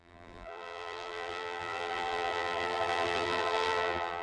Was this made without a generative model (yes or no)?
no